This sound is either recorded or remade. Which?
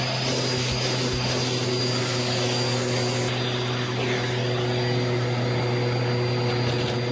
recorded